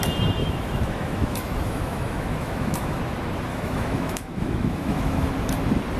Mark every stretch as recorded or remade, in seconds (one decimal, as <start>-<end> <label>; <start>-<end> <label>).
0.0-0.4 recorded; 0.4-3.0 remade; 3.0-3.5 recorded; 3.5-5.3 remade; 5.3-6.0 recorded